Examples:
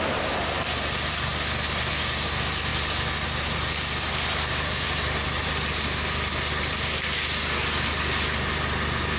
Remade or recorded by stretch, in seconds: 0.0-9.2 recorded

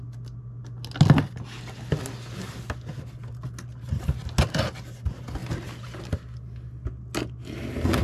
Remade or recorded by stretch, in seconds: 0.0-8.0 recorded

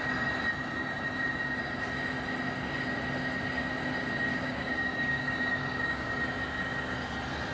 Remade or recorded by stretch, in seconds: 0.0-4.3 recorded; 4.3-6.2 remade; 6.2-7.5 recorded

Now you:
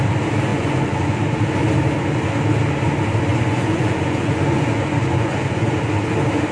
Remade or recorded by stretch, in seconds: 0.0-0.5 recorded; 0.5-1.2 remade; 1.2-3.3 recorded; 3.3-5.7 remade; 5.7-6.5 recorded